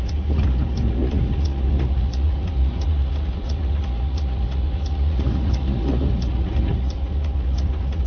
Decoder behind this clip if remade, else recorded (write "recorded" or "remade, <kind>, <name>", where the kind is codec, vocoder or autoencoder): remade, vocoder, Vocos